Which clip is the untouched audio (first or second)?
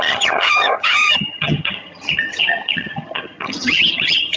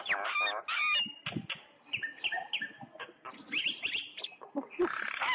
second